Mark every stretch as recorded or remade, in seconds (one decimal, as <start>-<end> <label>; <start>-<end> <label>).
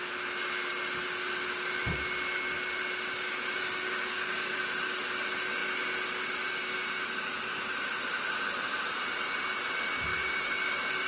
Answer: 0.0-3.5 recorded; 3.5-4.5 remade; 4.5-10.1 recorded; 10.1-11.1 remade